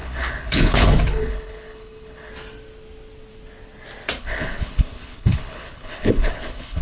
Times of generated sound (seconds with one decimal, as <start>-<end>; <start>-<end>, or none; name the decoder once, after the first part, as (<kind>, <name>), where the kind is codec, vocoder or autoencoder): 0.0-2.3 (codec, HILCodec); 4.2-6.8